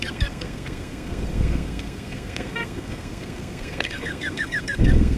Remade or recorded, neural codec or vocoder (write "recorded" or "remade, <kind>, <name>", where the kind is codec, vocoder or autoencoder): remade, codec, SNAC